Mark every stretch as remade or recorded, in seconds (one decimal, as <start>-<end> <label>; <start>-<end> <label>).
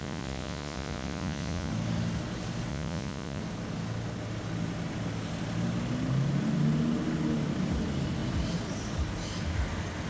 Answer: 0.0-1.7 remade; 1.7-2.7 recorded; 2.7-3.4 remade; 3.4-10.1 recorded